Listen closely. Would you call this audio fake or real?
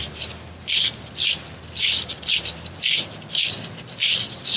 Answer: real